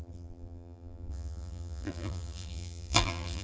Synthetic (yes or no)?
yes